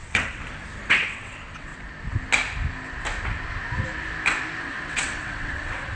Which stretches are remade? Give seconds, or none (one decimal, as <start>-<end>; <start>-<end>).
0.0-0.4; 0.9-1.7; 4.6-6.0

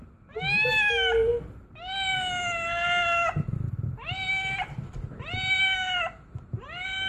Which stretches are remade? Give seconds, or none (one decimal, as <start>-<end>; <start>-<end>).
none

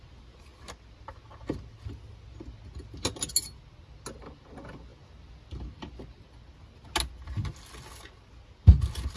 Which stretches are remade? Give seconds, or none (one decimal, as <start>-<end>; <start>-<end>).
none

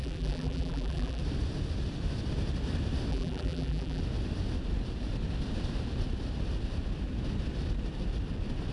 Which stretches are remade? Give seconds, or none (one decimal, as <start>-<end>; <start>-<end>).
0.0-1.2; 3.1-4.0

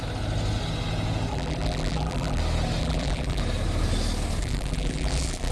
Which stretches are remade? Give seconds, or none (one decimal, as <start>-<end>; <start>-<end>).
1.3-2.4; 2.8-3.4; 4.4-5.5